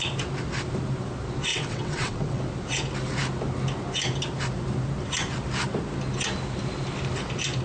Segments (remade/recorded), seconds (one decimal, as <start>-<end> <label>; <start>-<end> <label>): 0.0-1.5 recorded; 1.5-2.4 remade; 2.4-7.6 recorded